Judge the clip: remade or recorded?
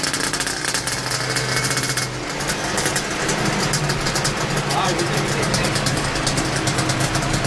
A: recorded